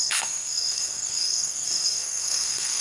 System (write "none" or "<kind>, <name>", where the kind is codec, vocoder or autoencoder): codec, SNAC